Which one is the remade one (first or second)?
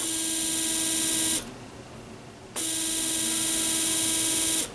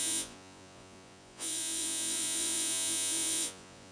second